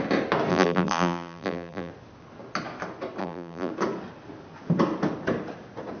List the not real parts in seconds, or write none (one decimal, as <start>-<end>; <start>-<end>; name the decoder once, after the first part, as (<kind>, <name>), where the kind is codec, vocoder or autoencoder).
0.5-1.9 (vocoder, BigVGAN v2); 3.2-3.7